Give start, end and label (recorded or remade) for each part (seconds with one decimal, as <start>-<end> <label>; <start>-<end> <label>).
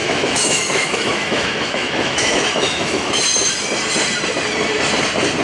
0.0-3.2 remade; 3.2-5.4 recorded